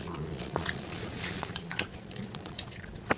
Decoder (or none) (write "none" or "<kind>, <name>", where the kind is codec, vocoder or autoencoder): vocoder, Vocos